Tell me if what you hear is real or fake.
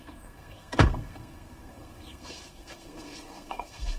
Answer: fake